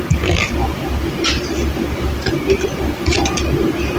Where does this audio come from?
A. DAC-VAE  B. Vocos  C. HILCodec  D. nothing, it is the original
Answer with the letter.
D